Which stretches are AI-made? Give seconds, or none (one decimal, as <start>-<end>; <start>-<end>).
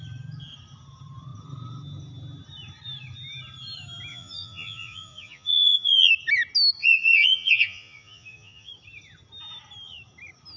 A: 4.1-6.1; 6.8-8.7